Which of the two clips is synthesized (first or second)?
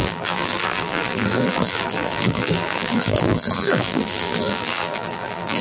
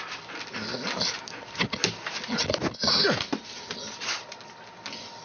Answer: first